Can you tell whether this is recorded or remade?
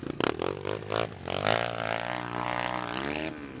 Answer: recorded